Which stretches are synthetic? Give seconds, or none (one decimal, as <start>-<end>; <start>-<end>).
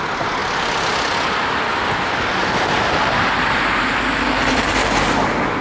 none